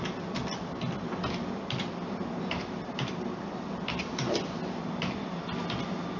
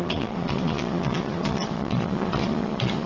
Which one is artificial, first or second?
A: second